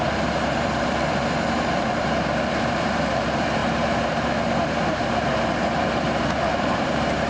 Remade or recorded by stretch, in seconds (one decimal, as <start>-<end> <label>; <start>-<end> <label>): 0.0-7.3 remade